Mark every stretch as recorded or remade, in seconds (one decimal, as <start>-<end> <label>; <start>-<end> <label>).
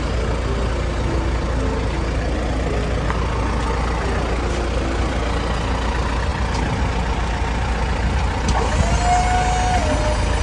0.0-10.4 recorded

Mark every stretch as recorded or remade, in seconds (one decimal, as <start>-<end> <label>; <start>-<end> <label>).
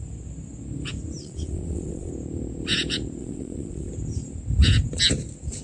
0.0-1.2 recorded; 1.2-2.1 remade; 2.1-3.2 recorded; 3.2-3.9 remade; 3.9-5.6 recorded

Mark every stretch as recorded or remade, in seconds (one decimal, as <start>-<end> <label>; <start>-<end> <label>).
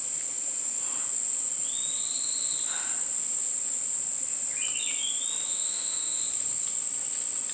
0.0-5.5 recorded; 5.5-6.2 remade; 6.2-7.5 recorded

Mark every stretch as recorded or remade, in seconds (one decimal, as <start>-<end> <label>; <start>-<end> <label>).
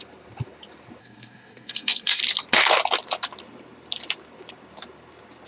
0.0-1.0 recorded; 1.0-2.2 remade; 2.2-5.5 recorded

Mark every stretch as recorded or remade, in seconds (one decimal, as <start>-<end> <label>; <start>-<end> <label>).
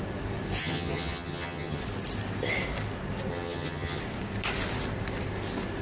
0.0-0.6 recorded; 0.6-1.8 remade; 1.8-3.3 recorded; 3.3-4.0 remade; 4.0-5.8 recorded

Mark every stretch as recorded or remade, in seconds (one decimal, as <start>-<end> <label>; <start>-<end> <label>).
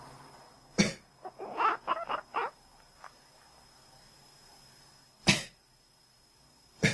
0.0-6.9 recorded